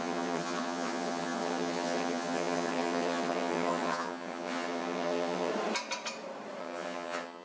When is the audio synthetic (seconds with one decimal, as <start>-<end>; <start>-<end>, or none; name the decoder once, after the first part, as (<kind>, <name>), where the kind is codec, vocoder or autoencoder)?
0.0-5.5 (vocoder, HiFi-GAN); 6.6-7.4